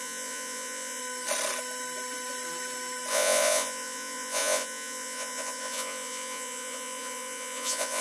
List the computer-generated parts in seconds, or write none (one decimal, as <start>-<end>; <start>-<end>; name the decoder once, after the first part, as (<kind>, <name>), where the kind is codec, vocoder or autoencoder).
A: 0.0-1.0 (vocoder, Vocos); 3.1-8.0